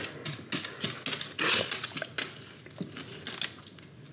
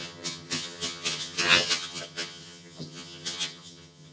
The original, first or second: first